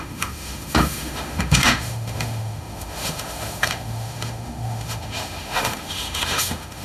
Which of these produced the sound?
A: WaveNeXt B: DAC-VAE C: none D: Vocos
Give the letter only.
B